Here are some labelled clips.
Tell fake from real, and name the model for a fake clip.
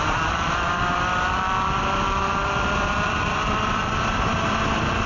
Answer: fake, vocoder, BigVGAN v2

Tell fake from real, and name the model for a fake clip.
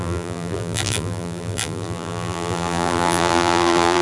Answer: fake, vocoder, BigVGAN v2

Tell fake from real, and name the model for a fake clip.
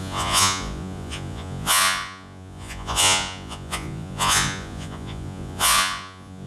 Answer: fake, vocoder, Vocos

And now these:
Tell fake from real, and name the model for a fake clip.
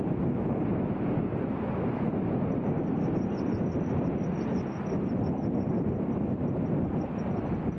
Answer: real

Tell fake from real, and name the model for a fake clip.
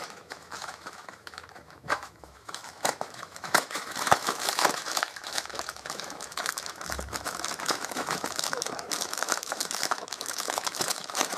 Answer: fake, autoencoder, DAC-VAE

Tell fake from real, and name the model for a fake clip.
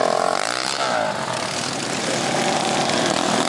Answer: real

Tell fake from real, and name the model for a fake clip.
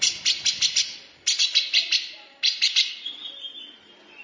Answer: real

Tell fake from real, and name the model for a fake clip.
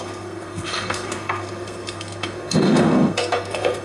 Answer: fake, codec, SNAC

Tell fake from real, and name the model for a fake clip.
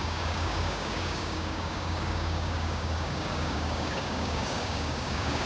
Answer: fake, codec, DAC